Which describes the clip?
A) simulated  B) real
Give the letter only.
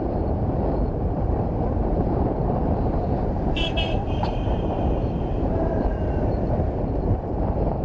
A